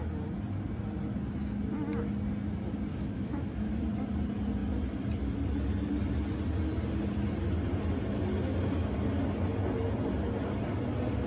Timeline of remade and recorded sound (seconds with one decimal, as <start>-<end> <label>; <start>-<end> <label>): 0.0-2.9 recorded; 2.9-3.8 remade; 3.8-11.3 recorded